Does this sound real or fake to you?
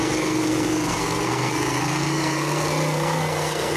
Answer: fake